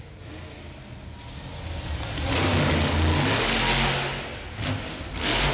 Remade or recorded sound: recorded